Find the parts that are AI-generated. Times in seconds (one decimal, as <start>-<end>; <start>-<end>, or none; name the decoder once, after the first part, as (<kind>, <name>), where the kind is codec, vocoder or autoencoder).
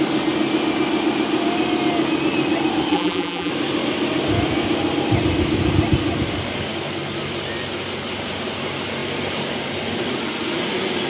2.9-3.5 (vocoder, BigVGAN v2)